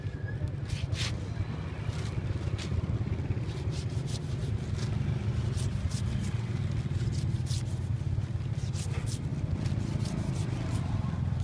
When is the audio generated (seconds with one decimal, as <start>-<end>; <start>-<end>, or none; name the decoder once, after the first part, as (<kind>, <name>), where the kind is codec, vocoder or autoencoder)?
none